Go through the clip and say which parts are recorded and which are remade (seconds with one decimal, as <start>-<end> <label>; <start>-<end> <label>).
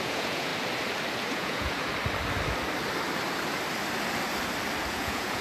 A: 0.0-0.5 remade; 0.5-1.3 recorded; 1.3-1.8 remade; 1.8-4.9 recorded; 4.9-5.4 remade